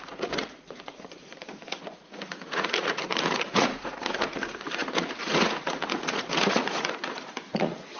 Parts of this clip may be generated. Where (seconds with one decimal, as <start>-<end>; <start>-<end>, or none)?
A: 0.0-8.0